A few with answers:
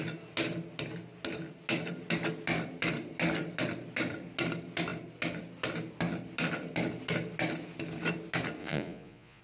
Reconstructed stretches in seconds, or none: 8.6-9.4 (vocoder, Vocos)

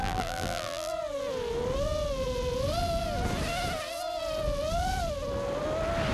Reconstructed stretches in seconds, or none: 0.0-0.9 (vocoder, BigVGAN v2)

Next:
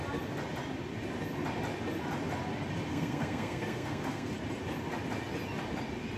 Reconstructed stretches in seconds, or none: 2.9-4.3 (codec, SNAC)

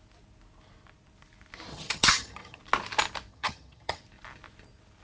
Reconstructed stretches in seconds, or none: 1.7-2.6 (vocoder, HiFi-GAN); 3.3-4.0